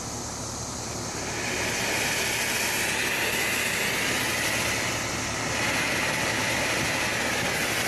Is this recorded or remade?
recorded